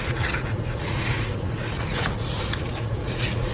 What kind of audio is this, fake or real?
fake